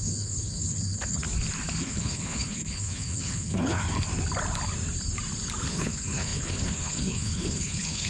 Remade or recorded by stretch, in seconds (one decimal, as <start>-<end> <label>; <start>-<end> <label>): 0.0-1.2 remade; 1.2-1.8 recorded; 1.8-3.8 remade; 3.8-5.7 recorded; 5.7-8.1 remade